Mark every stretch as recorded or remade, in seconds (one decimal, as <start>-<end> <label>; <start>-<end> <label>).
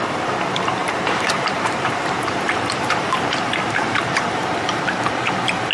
0.0-0.8 recorded; 0.8-4.2 remade; 4.2-5.7 recorded